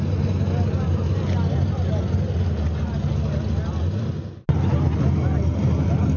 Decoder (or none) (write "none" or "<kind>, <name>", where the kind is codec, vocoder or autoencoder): none